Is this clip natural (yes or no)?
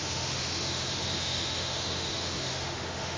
no